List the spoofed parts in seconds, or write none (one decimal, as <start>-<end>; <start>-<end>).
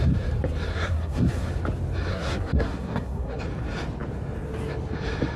0.7-1.5; 2.1-3.4